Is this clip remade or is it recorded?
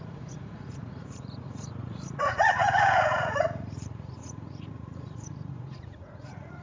remade